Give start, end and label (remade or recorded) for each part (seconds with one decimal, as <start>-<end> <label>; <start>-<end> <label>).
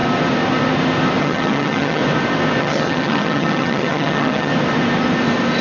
0.0-1.2 recorded; 1.2-2.0 remade; 2.0-2.6 recorded; 2.6-4.5 remade; 4.5-5.6 recorded